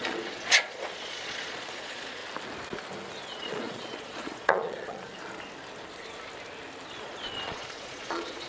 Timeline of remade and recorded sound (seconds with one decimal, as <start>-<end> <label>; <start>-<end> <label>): 0.0-2.2 remade; 2.2-3.2 recorded; 3.2-5.1 remade; 5.1-7.0 recorded; 7.0-8.5 remade